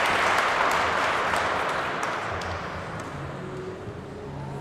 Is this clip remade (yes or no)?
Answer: no